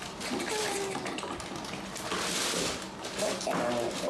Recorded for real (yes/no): yes